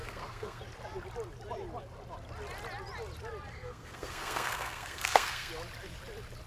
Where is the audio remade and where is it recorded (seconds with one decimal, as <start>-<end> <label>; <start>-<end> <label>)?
0.0-0.6 remade; 0.6-3.5 recorded; 3.5-5.5 remade; 5.5-6.5 recorded